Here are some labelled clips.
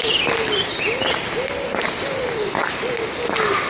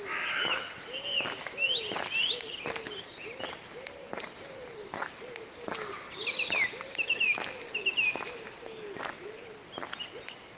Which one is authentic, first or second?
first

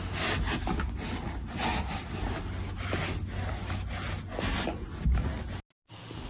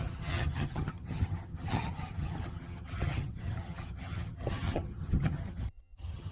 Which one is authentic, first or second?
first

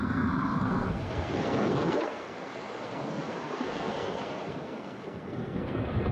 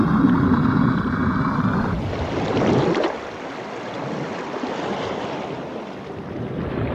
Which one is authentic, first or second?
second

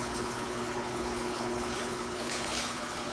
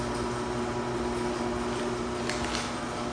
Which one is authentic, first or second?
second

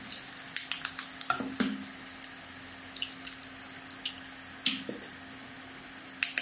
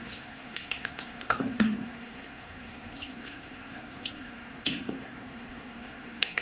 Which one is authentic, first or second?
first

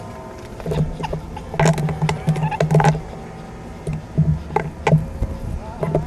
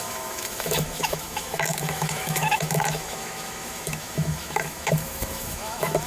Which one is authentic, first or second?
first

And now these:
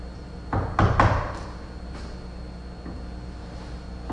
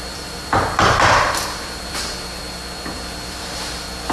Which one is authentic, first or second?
first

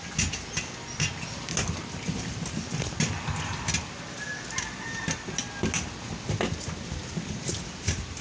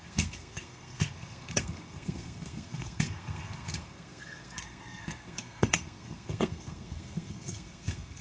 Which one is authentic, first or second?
first